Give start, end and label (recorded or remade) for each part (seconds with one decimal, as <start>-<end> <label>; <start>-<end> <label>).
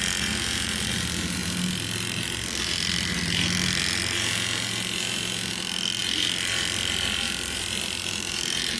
0.0-8.8 recorded